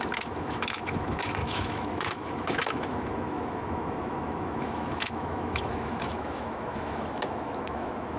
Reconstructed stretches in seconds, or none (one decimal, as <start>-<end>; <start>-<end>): 0.0-8.2